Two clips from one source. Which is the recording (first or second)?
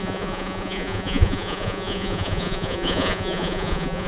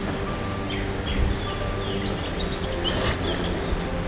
second